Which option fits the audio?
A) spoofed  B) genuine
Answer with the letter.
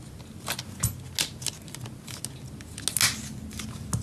B